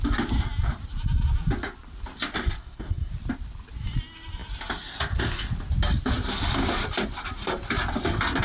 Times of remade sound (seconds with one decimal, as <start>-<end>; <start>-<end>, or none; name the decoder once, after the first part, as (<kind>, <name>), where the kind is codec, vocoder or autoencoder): 2.6-3.1 (codec, SNAC)